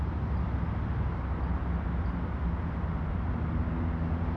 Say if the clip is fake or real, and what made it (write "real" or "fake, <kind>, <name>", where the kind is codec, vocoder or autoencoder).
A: real